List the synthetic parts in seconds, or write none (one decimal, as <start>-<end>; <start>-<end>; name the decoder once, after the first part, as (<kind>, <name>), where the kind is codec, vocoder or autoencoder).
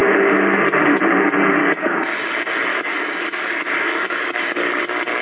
1.6-2.3 (codec, DAC); 2.7-4.8